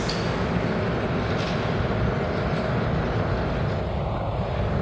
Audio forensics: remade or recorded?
recorded